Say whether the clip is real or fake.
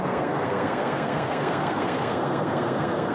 fake